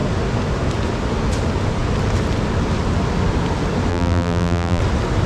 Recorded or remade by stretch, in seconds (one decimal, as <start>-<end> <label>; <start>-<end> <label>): 0.0-3.9 recorded; 3.9-4.8 remade; 4.8-5.3 recorded